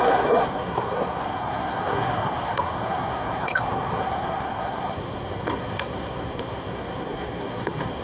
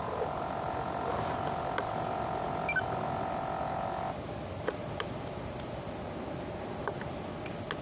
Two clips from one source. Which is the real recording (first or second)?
second